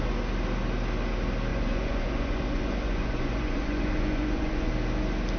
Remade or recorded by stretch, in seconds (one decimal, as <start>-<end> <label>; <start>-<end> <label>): 0.0-1.5 recorded; 1.5-4.7 remade; 4.7-5.4 recorded